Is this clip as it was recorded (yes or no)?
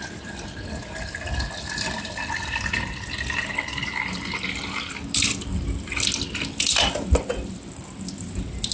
yes